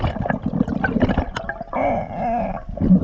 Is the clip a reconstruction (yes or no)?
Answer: no